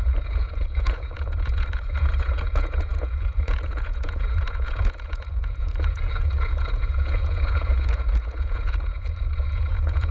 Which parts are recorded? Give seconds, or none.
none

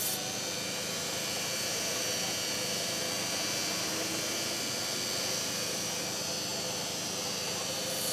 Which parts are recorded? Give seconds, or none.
0.0-8.1

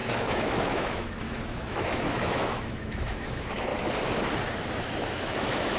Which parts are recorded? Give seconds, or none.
3.7-4.8

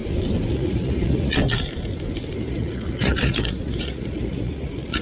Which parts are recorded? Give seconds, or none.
0.0-0.5; 1.4-2.4

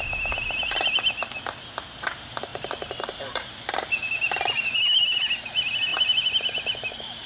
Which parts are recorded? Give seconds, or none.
0.0-2.5; 3.5-5.9

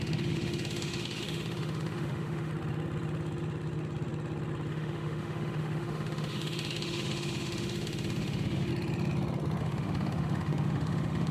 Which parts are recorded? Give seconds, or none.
2.5-4.7; 8.7-9.6

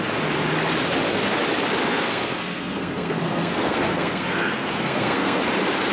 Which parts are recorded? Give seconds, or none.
0.0-1.9; 5.4-5.9